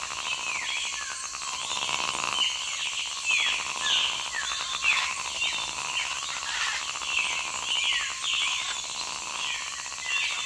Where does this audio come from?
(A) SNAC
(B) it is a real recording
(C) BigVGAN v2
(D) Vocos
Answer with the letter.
B